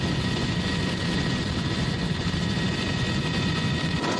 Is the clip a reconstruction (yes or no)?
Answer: yes